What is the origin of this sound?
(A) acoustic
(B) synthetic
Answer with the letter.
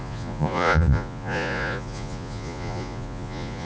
B